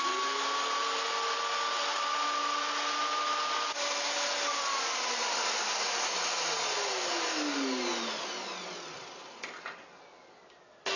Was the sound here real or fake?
real